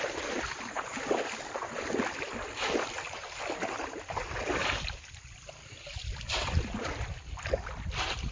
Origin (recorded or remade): remade